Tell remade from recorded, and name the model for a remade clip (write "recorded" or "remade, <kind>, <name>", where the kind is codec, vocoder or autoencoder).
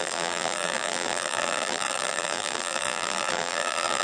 remade, vocoder, BigVGAN v2